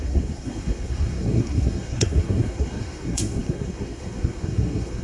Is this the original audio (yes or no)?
no